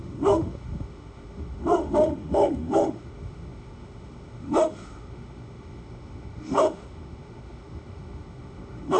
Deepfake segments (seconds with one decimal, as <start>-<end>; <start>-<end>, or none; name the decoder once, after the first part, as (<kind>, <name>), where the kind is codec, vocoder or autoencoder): 0.0-9.0 (autoencoder, DAC-VAE)